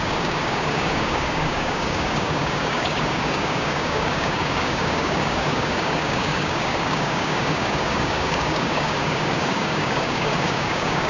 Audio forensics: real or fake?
fake